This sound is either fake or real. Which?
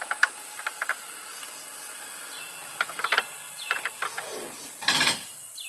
real